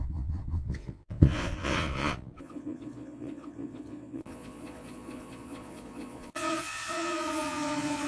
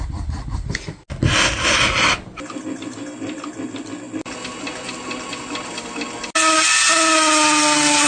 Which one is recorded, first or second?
second